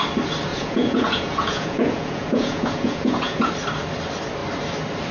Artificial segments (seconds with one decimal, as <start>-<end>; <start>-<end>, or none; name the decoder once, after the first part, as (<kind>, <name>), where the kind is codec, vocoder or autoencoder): 0.5-3.5 (vocoder, Vocos)